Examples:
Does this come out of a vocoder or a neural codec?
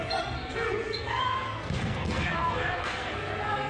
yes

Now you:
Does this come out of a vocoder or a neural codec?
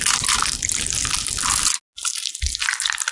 no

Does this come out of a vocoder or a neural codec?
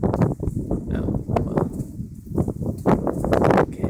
no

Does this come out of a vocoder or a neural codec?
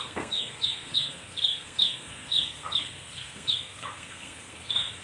yes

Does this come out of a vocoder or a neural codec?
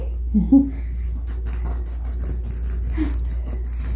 no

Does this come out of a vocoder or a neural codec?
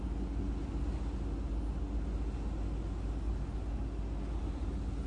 no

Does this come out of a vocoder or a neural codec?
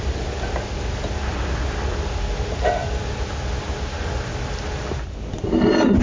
no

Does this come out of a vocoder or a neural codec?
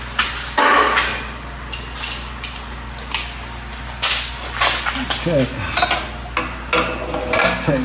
no